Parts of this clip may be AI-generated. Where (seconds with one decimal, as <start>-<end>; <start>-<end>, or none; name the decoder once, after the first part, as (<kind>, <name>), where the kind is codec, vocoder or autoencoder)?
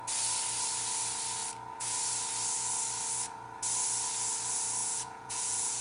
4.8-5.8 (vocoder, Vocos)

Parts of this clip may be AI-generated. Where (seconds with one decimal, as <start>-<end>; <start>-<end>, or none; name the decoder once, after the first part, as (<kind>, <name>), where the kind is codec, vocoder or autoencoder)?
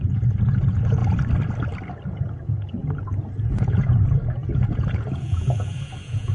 0.0-1.0 (vocoder, Vocos); 2.1-2.8; 3.4-6.3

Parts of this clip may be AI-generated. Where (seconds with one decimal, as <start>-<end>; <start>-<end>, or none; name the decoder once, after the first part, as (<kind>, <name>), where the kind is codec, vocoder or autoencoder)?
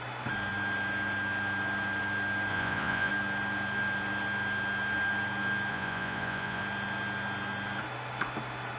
2.5-3.1 (vocoder, Vocos); 5.7-6.6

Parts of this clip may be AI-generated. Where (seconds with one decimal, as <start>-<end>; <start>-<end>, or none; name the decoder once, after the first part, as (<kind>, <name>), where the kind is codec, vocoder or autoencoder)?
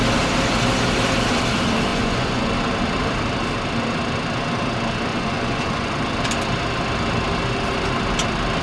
1.9-2.5 (vocoder, Vocos); 5.1-5.9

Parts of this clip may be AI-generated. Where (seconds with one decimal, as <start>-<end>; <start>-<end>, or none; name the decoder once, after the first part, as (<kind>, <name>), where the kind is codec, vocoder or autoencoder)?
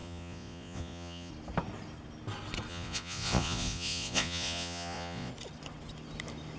0.0-1.3 (vocoder, Vocos); 2.7-5.3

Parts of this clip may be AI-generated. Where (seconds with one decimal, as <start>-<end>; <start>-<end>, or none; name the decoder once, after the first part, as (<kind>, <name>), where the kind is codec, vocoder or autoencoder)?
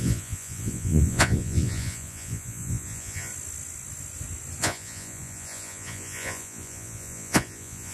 0.0-3.3 (vocoder, Vocos); 4.6-7.9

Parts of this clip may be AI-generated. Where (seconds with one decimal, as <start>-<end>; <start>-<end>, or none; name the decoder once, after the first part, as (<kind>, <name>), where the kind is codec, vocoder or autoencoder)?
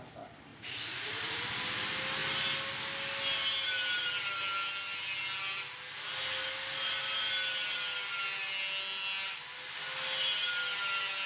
0.5-1.4 (vocoder, Vocos)